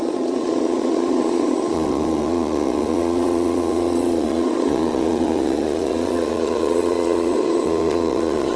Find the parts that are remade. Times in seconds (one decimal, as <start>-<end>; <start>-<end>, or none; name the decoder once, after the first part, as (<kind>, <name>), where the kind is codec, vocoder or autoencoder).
0.0-8.6 (vocoder, Vocos)